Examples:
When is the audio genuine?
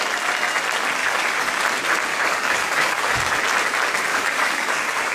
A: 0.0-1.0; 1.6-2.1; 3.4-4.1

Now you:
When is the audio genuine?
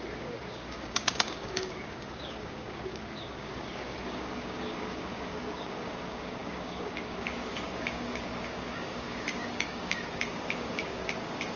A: none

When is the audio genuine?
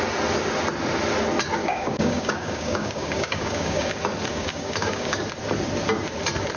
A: 0.0-1.6; 3.9-4.3; 5.2-6.6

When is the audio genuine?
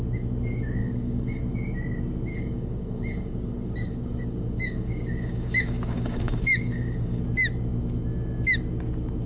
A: 0.0-0.8; 1.4-2.3; 7.2-9.3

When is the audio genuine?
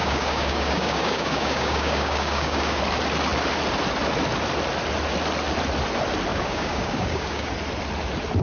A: 2.8-6.3; 7.5-8.4